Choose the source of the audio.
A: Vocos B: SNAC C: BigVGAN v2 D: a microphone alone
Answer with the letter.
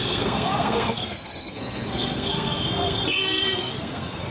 B